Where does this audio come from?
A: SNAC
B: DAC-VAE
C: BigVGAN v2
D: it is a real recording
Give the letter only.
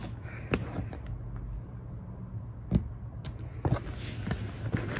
D